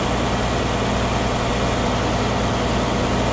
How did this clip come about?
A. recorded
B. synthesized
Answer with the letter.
A